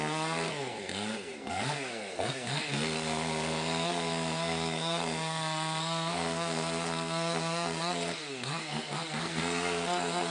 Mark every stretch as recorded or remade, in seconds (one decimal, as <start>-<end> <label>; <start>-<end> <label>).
0.0-10.3 remade